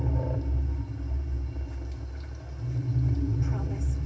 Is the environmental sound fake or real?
real